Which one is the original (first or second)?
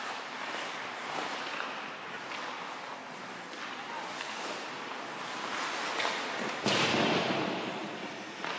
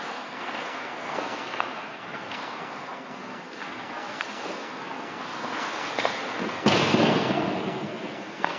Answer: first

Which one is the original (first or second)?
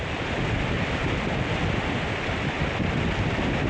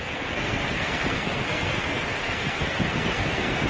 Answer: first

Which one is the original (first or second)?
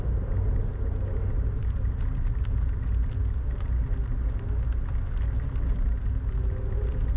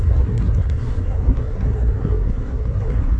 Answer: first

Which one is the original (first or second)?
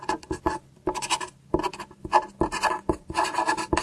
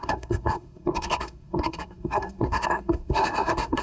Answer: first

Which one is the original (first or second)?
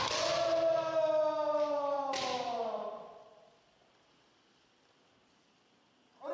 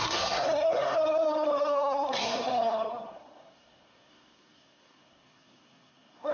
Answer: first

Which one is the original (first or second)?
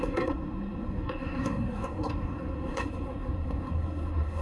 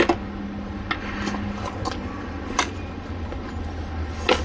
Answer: second